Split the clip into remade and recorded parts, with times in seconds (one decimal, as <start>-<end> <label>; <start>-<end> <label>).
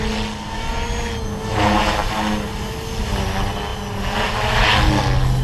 0.0-5.4 recorded